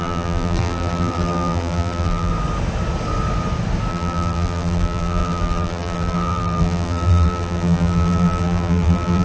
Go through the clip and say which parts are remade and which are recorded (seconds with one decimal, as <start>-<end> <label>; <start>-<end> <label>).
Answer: 0.0-2.3 remade; 2.3-3.9 recorded; 3.9-9.2 remade